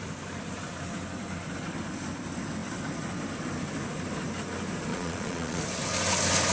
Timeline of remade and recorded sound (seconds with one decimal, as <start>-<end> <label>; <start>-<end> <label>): 0.0-4.9 recorded; 4.9-5.6 remade; 5.6-6.5 recorded